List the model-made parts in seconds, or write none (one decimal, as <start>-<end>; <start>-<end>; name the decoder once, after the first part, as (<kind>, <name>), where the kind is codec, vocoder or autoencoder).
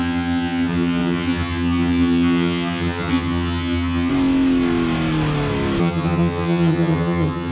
0.0-4.1 (vocoder, HiFi-GAN); 5.8-7.5